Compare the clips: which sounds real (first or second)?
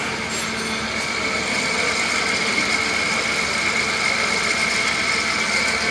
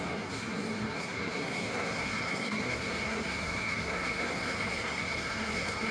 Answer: first